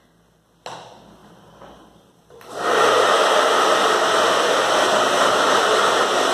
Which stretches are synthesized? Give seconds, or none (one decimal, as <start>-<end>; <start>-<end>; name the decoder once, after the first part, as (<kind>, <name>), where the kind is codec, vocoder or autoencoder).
1.2-3.3 (vocoder, BigVGAN v2)